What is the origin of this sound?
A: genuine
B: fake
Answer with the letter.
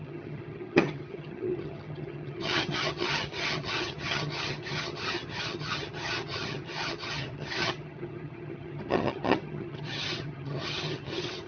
B